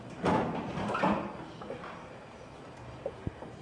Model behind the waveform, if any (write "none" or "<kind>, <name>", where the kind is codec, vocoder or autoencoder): vocoder, BigVGAN v2